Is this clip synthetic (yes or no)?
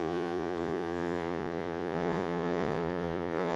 yes